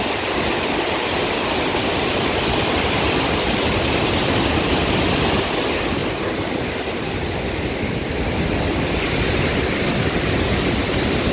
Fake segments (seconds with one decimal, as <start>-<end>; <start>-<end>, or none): none